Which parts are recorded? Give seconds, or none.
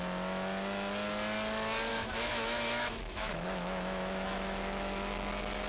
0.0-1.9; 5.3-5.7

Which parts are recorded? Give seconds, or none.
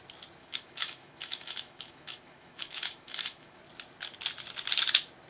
0.0-0.4; 3.6-5.3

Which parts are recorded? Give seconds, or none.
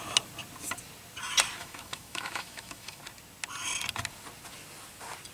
0.0-1.6; 3.0-5.3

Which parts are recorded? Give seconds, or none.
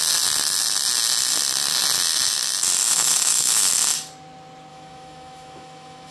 0.0-2.9; 3.7-4.7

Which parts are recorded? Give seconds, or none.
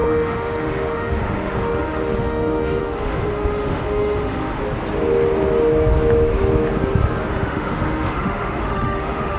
4.6-7.3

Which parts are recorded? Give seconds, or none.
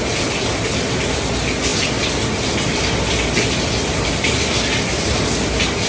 0.0-5.9